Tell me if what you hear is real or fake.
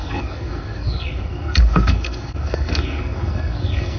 fake